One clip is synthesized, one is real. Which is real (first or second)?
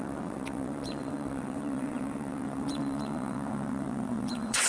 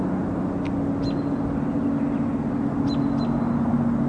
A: second